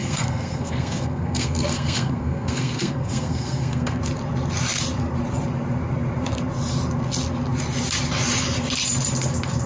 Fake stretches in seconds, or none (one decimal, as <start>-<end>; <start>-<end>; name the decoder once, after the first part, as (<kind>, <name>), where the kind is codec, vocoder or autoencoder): 0.0-4.0 (codec, SNAC)